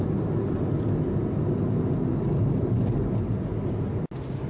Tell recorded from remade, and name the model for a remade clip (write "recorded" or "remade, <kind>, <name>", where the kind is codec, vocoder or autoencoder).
recorded